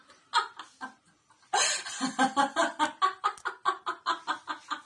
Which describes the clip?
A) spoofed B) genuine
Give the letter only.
B